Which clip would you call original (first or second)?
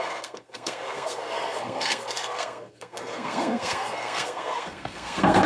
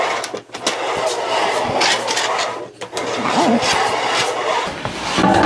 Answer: second